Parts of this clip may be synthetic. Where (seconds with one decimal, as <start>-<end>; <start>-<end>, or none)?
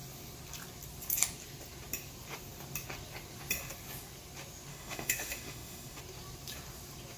4.7-6.0